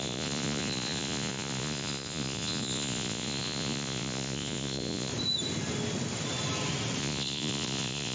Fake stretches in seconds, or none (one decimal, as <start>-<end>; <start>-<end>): 0.0-5.1; 7.0-8.1